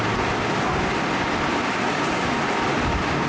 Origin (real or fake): real